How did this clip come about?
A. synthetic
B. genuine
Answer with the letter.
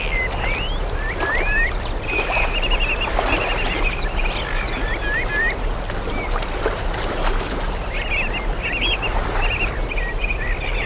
B